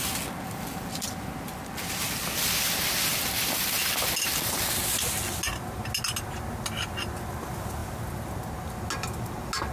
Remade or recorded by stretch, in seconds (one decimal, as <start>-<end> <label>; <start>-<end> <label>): 0.0-9.7 recorded